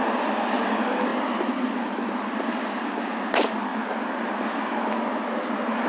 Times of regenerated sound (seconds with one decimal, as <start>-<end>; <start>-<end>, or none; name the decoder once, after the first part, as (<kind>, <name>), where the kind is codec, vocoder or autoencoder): none